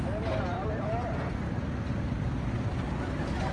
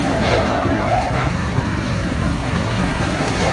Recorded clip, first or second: first